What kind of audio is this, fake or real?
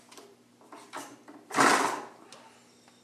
real